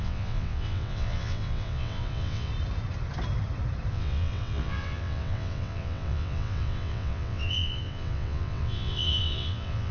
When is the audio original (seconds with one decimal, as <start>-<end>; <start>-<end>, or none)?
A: 2.5-3.9